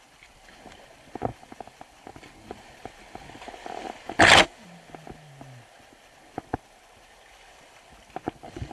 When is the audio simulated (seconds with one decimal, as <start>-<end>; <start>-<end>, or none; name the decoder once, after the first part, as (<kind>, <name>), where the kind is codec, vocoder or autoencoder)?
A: none